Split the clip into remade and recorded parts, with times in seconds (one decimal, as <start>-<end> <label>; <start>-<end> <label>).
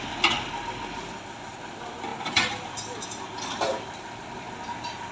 0.0-5.1 recorded